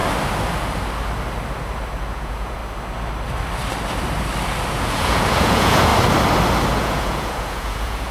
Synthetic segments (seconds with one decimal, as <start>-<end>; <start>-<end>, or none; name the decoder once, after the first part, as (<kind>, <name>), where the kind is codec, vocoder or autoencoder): 2.1-2.6 (vocoder, Vocos); 4.7-5.9; 6.7-8.1